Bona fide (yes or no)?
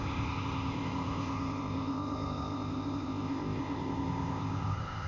no